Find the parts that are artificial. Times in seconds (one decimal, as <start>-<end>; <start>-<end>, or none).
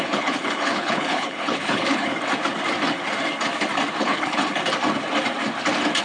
0.0-2.1; 4.0-4.6